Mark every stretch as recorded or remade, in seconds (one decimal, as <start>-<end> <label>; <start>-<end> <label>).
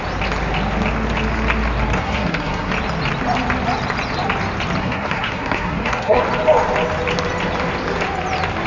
0.0-1.9 recorded; 1.9-2.7 remade; 2.7-4.8 recorded; 4.8-6.2 remade; 6.2-8.7 recorded